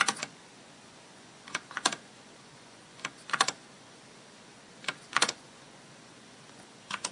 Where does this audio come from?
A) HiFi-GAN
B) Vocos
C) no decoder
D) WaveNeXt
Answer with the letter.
B